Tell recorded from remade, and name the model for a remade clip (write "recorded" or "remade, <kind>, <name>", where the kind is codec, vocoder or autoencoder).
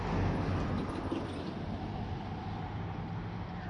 recorded